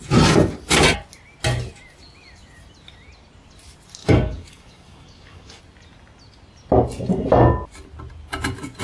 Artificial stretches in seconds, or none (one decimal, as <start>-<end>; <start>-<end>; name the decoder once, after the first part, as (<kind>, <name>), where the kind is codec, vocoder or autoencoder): 4.0-5.6 (codec, DAC)